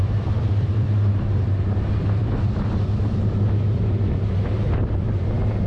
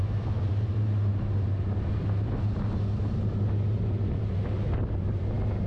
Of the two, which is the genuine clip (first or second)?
second